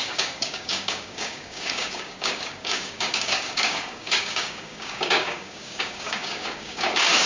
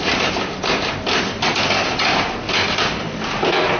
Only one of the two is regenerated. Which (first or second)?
first